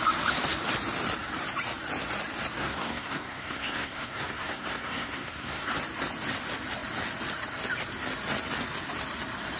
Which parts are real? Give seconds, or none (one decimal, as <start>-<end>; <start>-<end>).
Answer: 0.0-2.6; 5.7-9.6